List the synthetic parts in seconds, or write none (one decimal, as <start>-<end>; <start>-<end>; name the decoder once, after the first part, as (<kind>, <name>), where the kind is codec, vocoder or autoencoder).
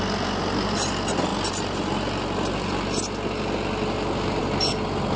none